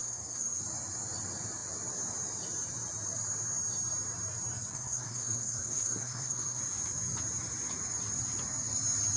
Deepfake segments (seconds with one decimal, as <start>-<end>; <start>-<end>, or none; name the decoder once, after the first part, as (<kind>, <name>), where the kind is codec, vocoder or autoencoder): 0.0-0.6 (codec, SNAC); 4.7-6.6